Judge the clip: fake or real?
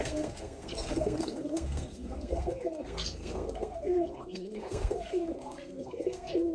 fake